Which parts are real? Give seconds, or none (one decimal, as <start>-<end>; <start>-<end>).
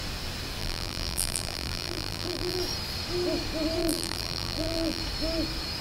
0.0-0.6; 2.6-3.8; 5.0-5.8